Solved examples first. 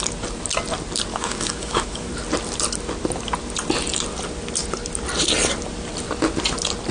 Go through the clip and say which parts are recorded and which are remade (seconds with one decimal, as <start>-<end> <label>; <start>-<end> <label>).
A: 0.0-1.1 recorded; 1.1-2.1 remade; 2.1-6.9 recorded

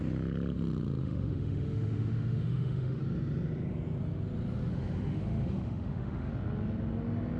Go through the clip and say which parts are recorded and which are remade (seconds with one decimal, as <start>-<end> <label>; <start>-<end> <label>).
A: 0.0-1.0 recorded; 1.0-3.0 remade; 3.0-4.7 recorded; 4.7-6.3 remade; 6.3-7.4 recorded

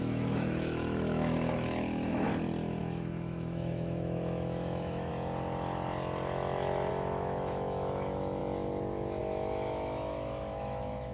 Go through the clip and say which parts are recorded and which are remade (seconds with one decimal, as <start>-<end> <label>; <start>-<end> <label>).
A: 0.0-2.3 remade; 2.3-2.8 recorded; 2.8-5.1 remade; 5.1-6.9 recorded; 6.9-8.4 remade; 8.4-9.2 recorded; 9.2-11.1 remade

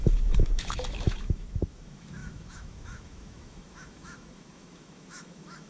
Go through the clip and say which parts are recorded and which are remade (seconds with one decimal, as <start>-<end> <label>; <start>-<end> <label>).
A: 0.0-5.7 remade